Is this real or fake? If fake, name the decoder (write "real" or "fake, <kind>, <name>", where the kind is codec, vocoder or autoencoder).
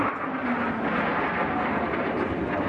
real